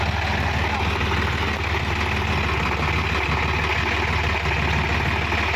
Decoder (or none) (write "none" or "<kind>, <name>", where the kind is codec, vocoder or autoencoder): none